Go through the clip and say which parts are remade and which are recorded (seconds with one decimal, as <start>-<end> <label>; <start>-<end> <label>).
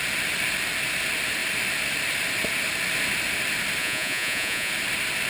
0.0-3.8 recorded; 3.8-4.7 remade; 4.7-5.3 recorded